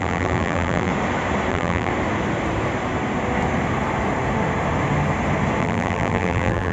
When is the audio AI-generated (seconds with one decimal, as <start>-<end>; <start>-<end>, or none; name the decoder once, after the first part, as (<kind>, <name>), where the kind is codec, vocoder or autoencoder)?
0.0-0.9 (vocoder, BigVGAN v2); 1.5-1.9; 5.6-6.7